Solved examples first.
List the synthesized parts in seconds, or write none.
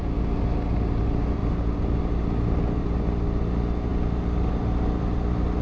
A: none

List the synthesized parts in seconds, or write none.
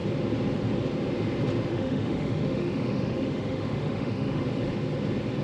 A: 1.7-4.4 (autoencoder, DAC-VAE)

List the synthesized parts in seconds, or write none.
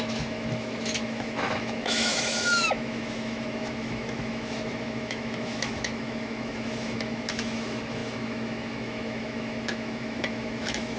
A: 0.0-11.0 (autoencoder, DAC-VAE)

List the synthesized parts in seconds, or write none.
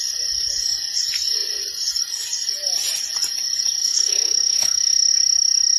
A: 3.8-5.1 (autoencoder, DAC-VAE)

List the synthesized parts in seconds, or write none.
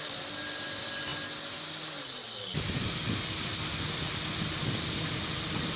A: none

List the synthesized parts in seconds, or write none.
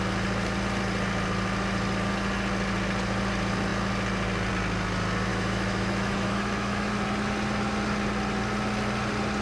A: 5.3-6.9 (autoencoder, DAC-VAE)